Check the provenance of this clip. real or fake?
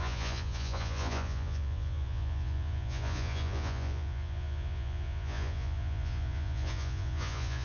fake